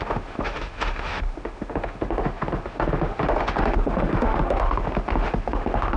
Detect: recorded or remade remade